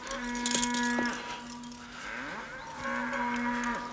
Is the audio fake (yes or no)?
no